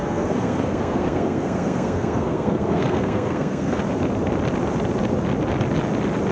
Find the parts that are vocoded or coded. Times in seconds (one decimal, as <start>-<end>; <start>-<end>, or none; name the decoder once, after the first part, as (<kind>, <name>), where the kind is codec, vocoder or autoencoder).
0.0-3.8 (codec, SNAC)